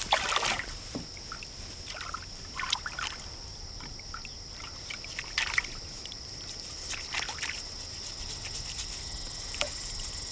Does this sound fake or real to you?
real